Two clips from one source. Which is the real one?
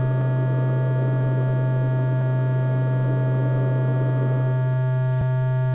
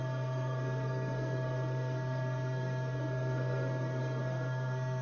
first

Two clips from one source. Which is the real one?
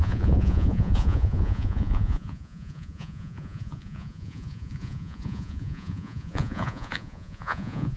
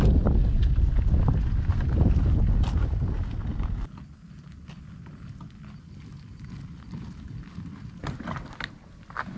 second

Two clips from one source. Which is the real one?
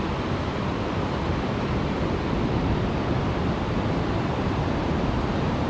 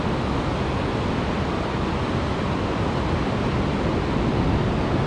second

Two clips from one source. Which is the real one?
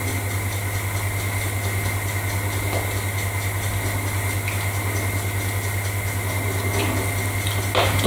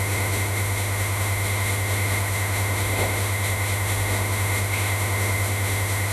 first